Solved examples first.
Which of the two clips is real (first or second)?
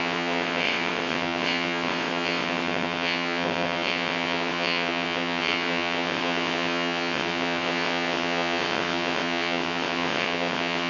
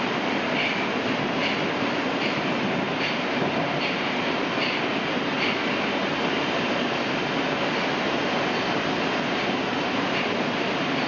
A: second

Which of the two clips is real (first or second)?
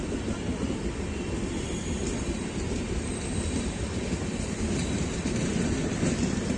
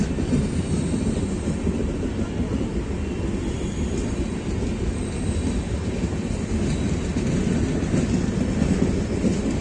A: second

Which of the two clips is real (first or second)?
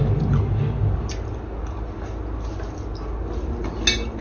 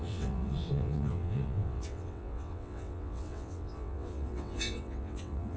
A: first